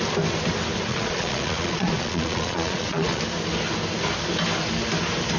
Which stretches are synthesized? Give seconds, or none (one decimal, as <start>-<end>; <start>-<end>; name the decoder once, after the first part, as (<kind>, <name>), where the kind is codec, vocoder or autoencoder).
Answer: 0.9-3.2 (vocoder, Vocos)